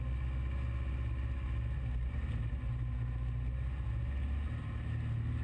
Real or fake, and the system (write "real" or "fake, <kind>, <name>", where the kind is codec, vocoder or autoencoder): real